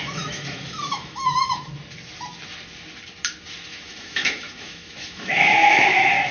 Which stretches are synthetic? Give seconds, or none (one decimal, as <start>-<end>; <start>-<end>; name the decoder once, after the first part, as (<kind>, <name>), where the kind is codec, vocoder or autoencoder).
0.0-1.7 (autoencoder, DAC-VAE); 3.7-6.3